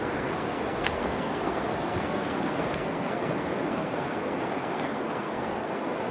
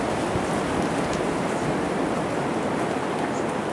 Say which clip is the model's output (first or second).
first